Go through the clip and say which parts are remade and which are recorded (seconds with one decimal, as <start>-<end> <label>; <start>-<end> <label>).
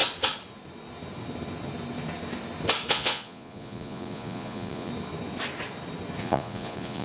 0.0-2.9 recorded; 2.9-4.9 remade; 4.9-6.2 recorded; 6.2-7.0 remade